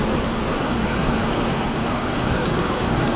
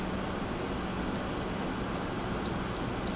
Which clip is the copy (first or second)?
first